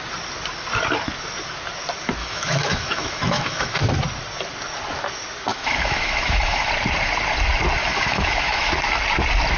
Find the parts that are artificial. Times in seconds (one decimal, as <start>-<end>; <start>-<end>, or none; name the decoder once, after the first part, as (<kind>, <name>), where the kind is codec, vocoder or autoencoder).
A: 2.2-3.8 (autoencoder, DAC-VAE); 5.5-6.7; 7.8-8.7